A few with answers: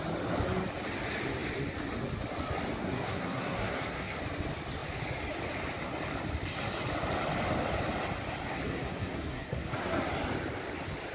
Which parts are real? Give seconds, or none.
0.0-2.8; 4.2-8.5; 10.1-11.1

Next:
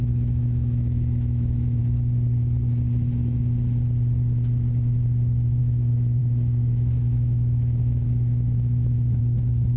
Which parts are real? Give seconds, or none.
1.8-5.6

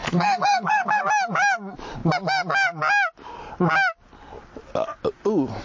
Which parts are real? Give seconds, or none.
1.0-5.6

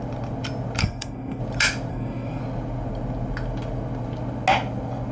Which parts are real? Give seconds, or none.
0.0-0.8; 1.4-1.9; 2.4-5.1

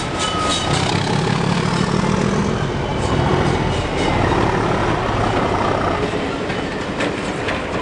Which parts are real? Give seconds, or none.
0.0-7.8

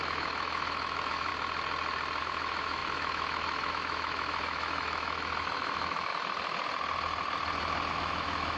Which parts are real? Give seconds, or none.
1.3-2.2; 6.1-7.9

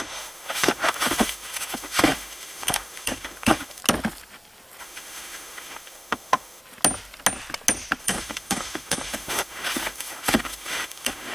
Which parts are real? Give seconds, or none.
3.8-4.8; 6.6-8.0

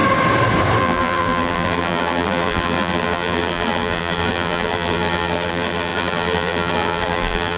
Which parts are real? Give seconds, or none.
0.0-0.8